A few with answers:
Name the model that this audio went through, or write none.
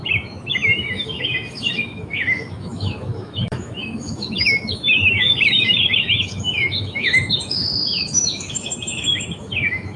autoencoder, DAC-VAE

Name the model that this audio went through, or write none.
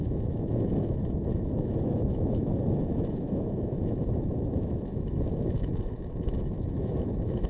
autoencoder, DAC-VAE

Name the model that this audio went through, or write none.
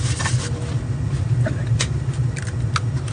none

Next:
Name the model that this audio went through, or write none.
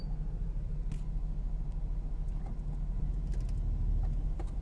none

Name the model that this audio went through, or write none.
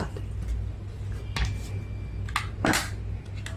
none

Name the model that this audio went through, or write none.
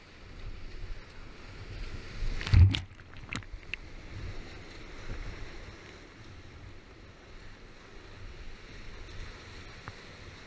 none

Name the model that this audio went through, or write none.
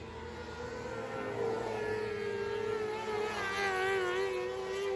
none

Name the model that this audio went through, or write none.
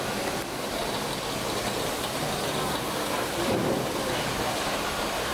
none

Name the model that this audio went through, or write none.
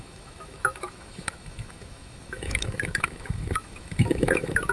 autoencoder, DAC-VAE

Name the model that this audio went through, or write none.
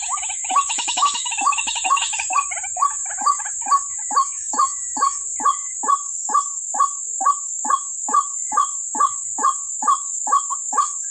autoencoder, DAC-VAE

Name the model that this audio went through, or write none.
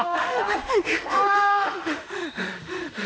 autoencoder, DAC-VAE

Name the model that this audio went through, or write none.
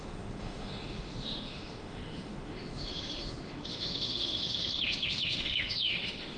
autoencoder, DAC-VAE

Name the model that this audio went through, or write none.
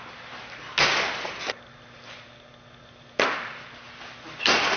none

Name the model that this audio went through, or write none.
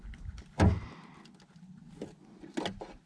none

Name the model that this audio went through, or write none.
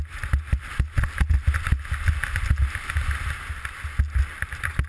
none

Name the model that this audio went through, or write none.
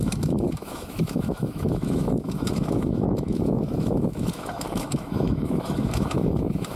autoencoder, DAC-VAE